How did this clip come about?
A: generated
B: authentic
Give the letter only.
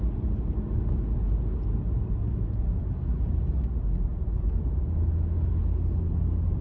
B